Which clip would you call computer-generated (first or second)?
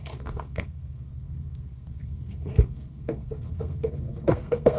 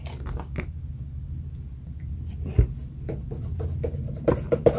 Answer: first